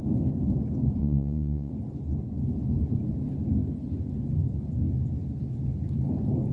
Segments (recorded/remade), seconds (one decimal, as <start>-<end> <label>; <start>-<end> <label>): 0.0-1.0 recorded; 1.0-1.7 remade; 1.7-6.5 recorded